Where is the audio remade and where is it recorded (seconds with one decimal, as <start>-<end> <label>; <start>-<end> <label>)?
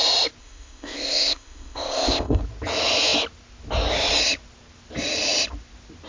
0.0-0.4 recorded; 0.4-2.4 remade; 2.4-6.1 recorded